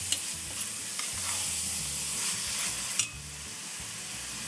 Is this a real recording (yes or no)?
yes